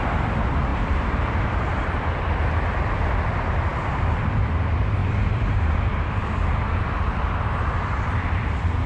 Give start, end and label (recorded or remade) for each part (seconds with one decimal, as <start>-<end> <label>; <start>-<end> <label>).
0.0-0.7 recorded; 0.7-1.9 remade; 1.9-5.0 recorded; 5.0-6.2 remade; 6.2-8.9 recorded